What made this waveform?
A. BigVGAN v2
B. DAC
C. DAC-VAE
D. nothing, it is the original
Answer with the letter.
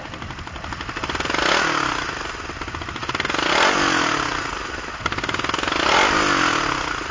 D